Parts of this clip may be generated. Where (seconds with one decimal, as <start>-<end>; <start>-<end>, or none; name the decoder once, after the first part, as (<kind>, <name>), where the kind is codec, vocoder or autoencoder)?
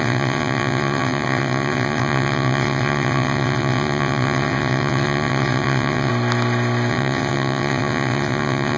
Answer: 0.0-6.1 (vocoder, WaveNeXt); 6.9-8.8